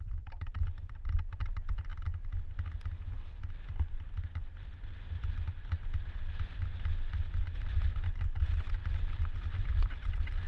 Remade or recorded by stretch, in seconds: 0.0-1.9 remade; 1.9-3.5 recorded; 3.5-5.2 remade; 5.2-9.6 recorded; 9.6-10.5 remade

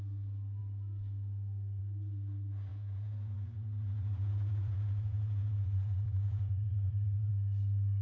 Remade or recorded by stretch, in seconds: 0.0-2.7 recorded; 2.7-7.3 remade; 7.3-8.0 recorded

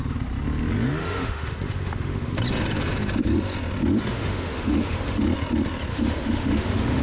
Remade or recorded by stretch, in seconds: 0.0-1.0 recorded; 1.0-2.3 remade; 2.3-4.1 recorded; 4.1-5.2 remade; 5.2-5.9 recorded; 5.9-7.0 remade

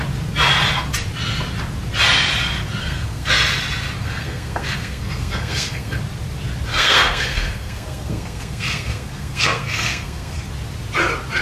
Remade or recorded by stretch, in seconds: 0.0-2.8 recorded; 2.8-3.3 remade; 3.3-4.0 recorded; 4.0-6.0 remade; 6.0-6.7 recorded; 6.7-10.5 remade; 10.5-11.4 recorded

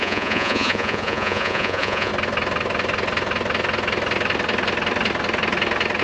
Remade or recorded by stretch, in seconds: 0.0-2.1 remade; 2.1-6.0 recorded